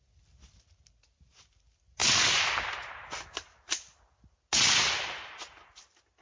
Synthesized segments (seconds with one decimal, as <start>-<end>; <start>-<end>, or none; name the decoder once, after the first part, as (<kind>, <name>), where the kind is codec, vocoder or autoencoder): none